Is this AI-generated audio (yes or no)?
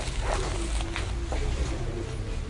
no